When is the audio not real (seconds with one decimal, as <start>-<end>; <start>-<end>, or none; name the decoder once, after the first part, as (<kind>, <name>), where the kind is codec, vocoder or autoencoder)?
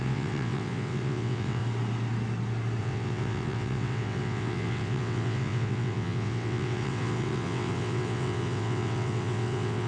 0.0-1.6 (vocoder, WaveNeXt); 2.8-9.9